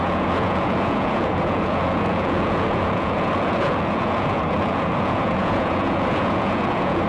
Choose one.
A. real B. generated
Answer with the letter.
B